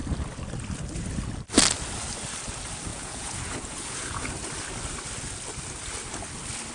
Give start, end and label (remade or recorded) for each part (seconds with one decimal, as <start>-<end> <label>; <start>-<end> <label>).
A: 0.0-2.9 recorded; 2.9-4.3 remade; 4.3-6.7 recorded